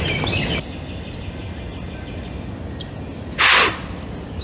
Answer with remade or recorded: recorded